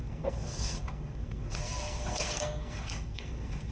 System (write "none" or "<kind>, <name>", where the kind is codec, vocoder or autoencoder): codec, SNAC